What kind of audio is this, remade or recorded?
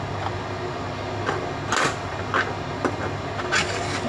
recorded